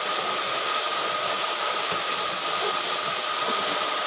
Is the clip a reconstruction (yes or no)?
no